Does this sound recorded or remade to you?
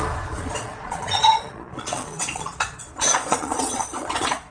remade